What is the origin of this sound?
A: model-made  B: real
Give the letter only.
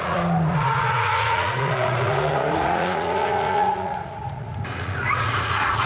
A